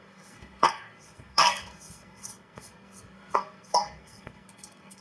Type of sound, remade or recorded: remade